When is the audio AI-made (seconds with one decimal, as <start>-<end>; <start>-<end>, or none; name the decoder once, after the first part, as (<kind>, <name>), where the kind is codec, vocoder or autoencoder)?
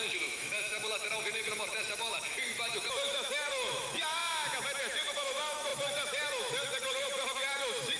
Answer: 0.0-4.2 (autoencoder, DAC-VAE); 4.8-8.0